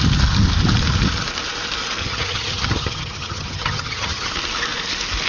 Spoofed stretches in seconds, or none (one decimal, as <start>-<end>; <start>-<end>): 2.0-4.3